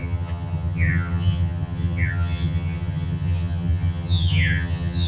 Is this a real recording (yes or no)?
no